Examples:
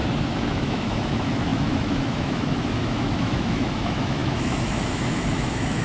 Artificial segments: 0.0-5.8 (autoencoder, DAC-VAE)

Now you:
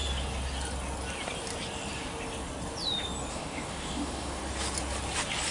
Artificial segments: 3.3-4.4 (autoencoder, DAC-VAE)

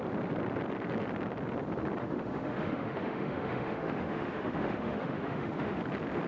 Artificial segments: 2.0-5.8 (autoencoder, DAC-VAE)

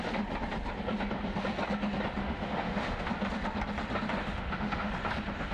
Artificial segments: 2.2-3.1 (autoencoder, DAC-VAE); 4.2-4.9

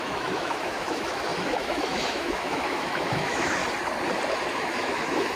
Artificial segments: 0.0-3.6 (autoencoder, DAC-VAE); 4.5-5.4

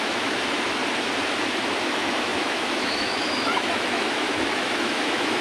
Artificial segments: 0.0-0.8 (autoencoder, DAC-VAE); 1.8-5.4